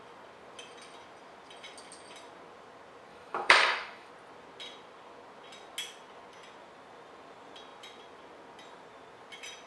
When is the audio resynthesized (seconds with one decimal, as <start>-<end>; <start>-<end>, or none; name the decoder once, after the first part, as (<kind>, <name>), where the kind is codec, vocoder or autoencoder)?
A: 3.1-4.1 (autoencoder, DAC-VAE)